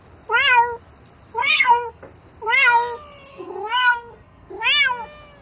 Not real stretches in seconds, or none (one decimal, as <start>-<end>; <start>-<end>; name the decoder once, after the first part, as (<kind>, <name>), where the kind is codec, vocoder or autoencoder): 1.4-2.0 (codec, SNAC); 3.3-4.5